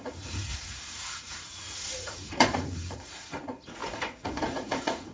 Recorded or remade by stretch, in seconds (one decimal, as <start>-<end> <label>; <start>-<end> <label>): 0.0-5.1 remade